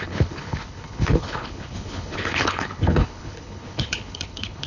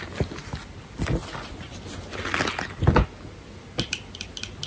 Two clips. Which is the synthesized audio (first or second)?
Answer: first